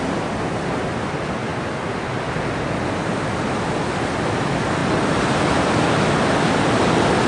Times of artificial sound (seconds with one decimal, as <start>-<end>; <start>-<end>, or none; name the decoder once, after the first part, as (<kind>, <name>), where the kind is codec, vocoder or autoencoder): none